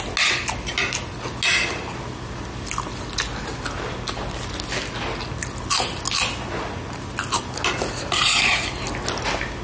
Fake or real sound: real